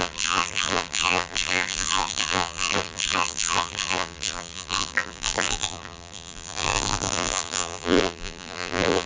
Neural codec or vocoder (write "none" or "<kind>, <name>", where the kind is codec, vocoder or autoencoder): vocoder, BigVGAN v2